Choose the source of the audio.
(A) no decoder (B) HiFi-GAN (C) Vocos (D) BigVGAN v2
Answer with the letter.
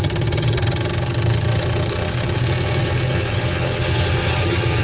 B